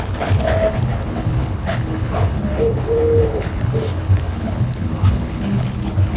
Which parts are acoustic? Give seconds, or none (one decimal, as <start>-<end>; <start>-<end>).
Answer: none